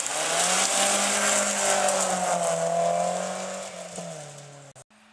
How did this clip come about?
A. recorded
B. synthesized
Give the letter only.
A